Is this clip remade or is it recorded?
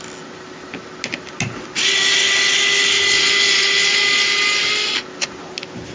recorded